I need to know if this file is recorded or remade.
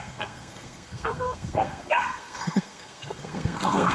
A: remade